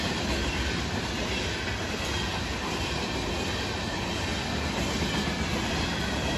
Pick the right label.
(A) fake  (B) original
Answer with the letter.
B